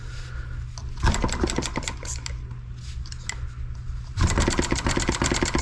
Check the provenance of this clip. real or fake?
real